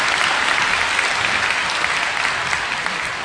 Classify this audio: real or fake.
real